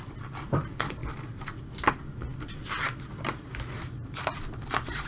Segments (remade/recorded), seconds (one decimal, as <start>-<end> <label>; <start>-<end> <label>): 0.0-1.0 remade; 1.0-1.9 recorded; 1.9-2.3 remade; 2.3-3.1 recorded; 3.1-5.1 remade